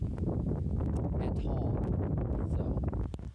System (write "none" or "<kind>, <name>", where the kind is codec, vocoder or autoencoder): none